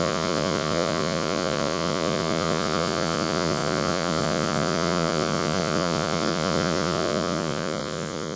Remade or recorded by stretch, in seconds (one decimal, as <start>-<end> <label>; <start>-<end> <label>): 0.0-8.4 remade